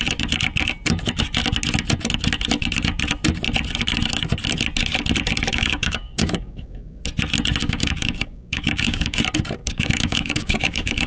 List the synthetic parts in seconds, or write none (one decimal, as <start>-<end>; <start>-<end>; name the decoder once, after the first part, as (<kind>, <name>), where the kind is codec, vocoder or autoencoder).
5.5-7.0 (codec, DAC); 7.6-9.2; 9.6-11.1